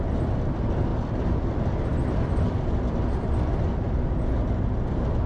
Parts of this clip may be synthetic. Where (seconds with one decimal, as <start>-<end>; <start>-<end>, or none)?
0.9-4.1